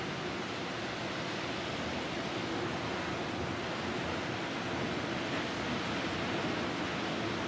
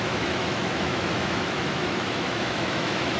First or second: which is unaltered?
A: first